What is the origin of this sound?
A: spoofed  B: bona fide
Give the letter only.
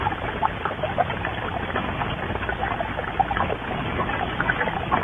B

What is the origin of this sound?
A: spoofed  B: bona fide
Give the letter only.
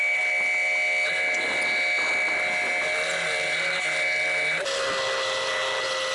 B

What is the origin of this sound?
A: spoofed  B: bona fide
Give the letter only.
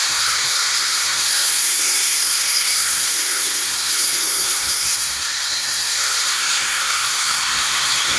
A